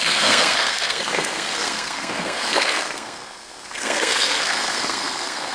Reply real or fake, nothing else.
fake